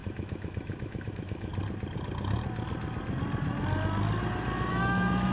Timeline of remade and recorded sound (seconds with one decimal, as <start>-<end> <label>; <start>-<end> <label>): 0.0-1.5 remade; 1.5-4.7 recorded; 4.7-5.3 remade